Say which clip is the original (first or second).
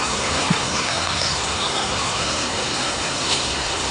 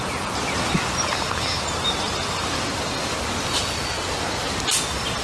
second